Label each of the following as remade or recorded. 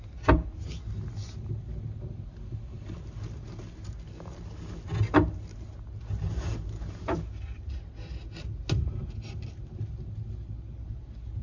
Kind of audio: recorded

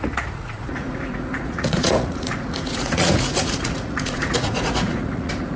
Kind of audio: remade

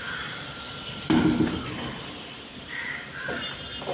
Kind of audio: remade